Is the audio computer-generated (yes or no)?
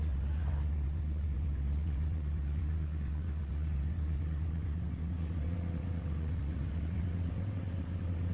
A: yes